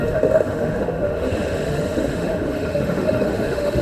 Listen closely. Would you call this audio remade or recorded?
remade